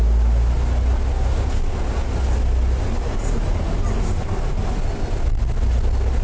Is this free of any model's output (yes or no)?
yes